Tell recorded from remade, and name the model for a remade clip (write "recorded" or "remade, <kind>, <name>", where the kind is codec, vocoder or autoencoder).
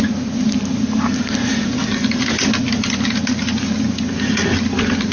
recorded